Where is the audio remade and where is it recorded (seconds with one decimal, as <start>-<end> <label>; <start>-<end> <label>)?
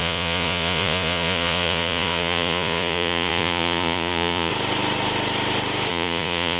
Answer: 0.0-4.5 remade; 4.5-5.9 recorded; 5.9-6.6 remade